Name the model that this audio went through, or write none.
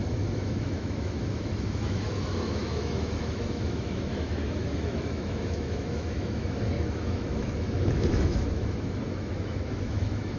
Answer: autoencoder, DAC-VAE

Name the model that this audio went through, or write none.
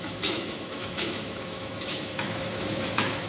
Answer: autoencoder, DAC-VAE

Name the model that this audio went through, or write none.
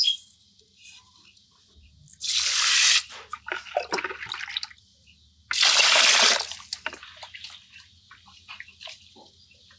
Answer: none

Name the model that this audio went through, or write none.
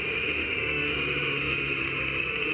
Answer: autoencoder, DAC-VAE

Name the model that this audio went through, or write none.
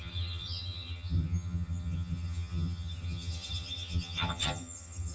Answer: vocoder, HiFi-GAN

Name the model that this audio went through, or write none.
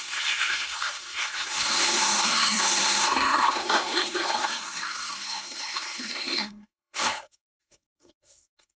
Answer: codec, SNAC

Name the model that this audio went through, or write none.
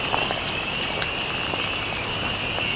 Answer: none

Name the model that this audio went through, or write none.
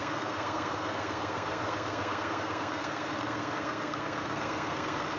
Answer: codec, SNAC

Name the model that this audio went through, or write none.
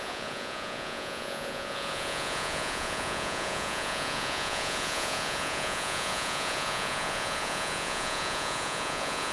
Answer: vocoder, Vocos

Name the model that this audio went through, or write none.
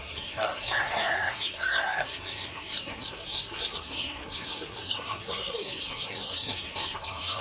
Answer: codec, SNAC